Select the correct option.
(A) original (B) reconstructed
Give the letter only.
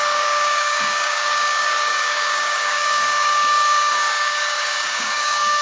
B